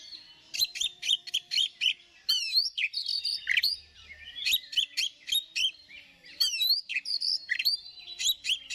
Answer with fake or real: fake